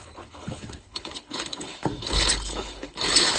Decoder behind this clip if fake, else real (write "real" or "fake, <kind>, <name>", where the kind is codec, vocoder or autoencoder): fake, codec, HILCodec